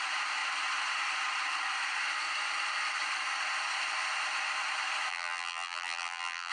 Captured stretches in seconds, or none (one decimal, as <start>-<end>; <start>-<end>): 0.0-5.1